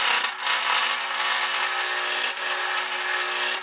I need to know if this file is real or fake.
real